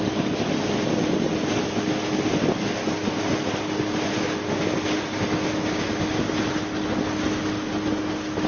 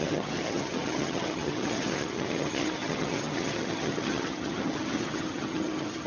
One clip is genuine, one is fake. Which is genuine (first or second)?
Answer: first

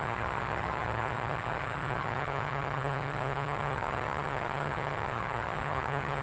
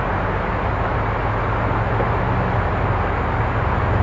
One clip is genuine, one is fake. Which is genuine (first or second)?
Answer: second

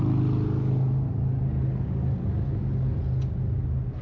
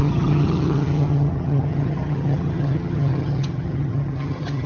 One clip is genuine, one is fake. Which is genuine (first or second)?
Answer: first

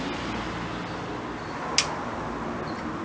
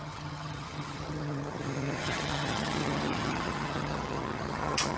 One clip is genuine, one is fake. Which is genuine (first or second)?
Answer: first